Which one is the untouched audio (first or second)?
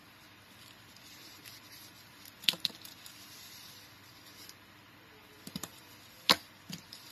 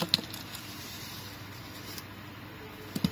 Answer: second